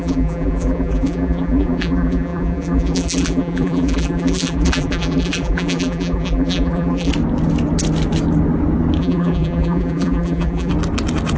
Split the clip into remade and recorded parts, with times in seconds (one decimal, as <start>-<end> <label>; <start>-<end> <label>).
0.0-7.1 remade; 7.1-9.0 recorded; 9.0-10.7 remade; 10.7-11.4 recorded